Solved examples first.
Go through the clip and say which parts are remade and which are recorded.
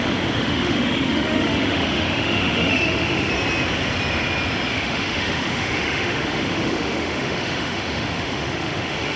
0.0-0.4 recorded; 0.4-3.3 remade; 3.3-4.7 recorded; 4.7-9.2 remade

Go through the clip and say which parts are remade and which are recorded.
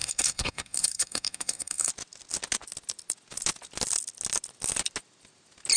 0.0-1.9 remade; 1.9-5.8 recorded